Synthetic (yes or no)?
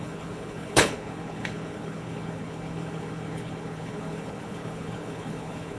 yes